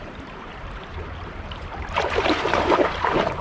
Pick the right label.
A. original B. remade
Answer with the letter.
B